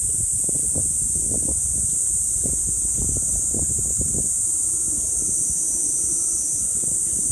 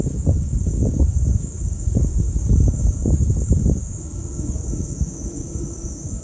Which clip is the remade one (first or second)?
second